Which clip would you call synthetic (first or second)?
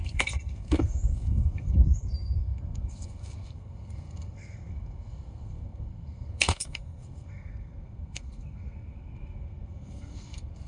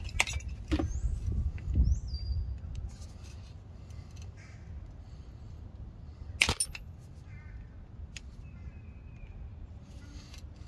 first